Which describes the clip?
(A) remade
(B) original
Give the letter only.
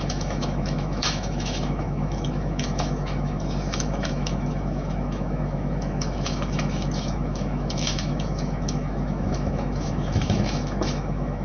A